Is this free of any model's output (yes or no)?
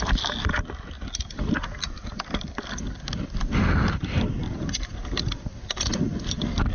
yes